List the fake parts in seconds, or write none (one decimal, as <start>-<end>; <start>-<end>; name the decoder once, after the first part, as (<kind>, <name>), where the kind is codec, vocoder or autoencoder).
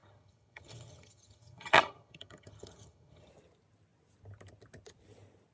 0.0-3.3 (vocoder, HiFi-GAN)